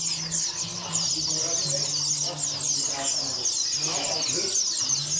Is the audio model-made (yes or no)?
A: no